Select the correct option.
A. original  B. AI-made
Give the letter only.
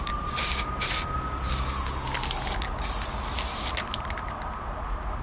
A